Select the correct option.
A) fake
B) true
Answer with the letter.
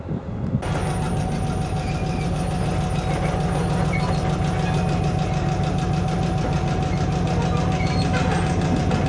B